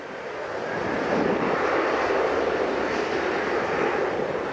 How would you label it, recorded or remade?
recorded